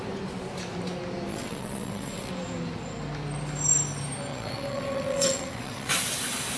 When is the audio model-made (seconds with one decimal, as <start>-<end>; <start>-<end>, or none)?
1.3-2.3; 4.3-5.9